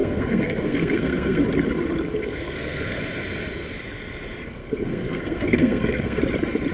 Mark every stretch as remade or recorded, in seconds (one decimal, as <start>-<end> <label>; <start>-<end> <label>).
0.0-1.4 remade; 1.4-2.2 recorded; 2.2-3.0 remade; 3.0-4.6 recorded; 4.6-6.2 remade; 6.2-6.7 recorded